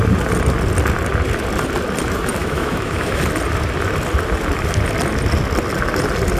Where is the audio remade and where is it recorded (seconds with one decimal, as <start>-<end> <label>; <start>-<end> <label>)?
0.0-2.4 recorded; 2.4-3.2 remade; 3.2-6.4 recorded